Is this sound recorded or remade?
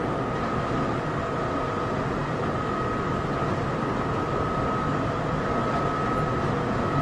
recorded